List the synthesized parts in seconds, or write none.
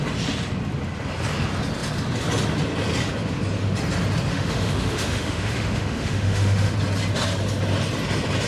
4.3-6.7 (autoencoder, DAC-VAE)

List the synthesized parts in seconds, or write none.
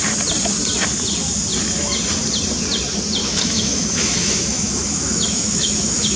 3.2-6.2 (autoencoder, DAC-VAE)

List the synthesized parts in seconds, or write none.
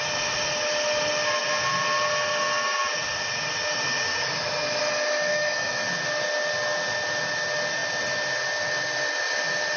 5.3-5.8 (autoencoder, DAC-VAE)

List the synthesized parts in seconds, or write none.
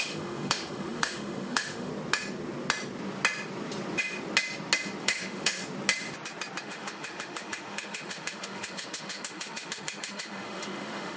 0.0-1.9 (autoencoder, DAC-VAE); 5.0-5.6; 6.6-11.2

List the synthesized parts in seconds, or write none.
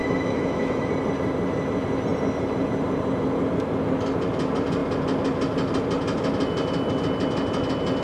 0.0-0.9 (autoencoder, DAC-VAE)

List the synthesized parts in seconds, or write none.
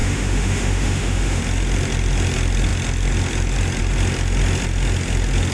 0.0-1.4 (autoencoder, DAC-VAE)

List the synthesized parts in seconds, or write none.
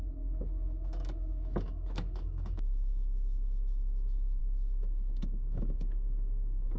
0.0-6.8 (autoencoder, DAC-VAE)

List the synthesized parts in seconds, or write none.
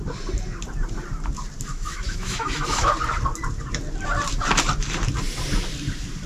1.7-2.9 (autoencoder, DAC-VAE)